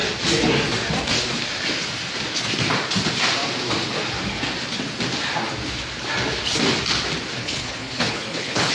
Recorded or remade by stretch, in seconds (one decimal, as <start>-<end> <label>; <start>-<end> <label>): 0.0-7.4 recorded; 7.4-8.7 remade